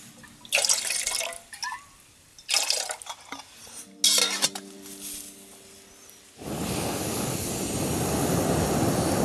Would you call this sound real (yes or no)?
yes